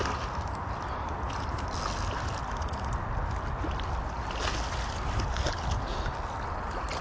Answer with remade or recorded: recorded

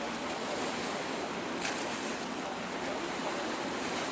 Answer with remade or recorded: recorded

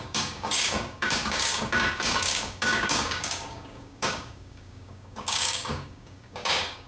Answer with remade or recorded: remade